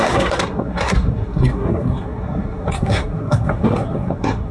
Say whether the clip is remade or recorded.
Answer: remade